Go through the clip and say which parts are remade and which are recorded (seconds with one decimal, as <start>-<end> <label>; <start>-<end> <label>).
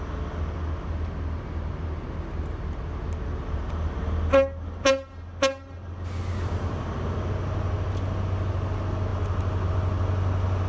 0.0-10.7 recorded